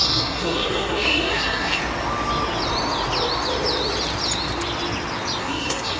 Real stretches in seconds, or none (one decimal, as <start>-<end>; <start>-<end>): 1.8-5.4